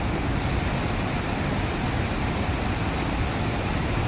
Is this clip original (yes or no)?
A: yes